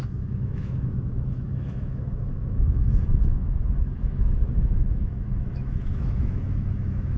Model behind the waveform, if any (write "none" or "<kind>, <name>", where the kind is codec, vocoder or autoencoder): autoencoder, DAC-VAE